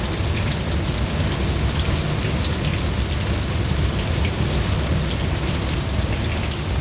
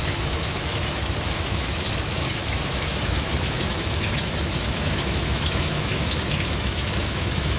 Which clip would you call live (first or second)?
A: first